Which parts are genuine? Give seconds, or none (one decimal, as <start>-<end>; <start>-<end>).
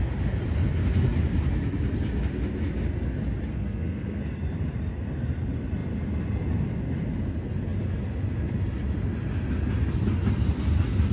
0.0-3.5; 4.2-11.1